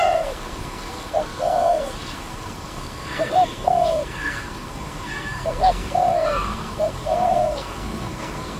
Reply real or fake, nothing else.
fake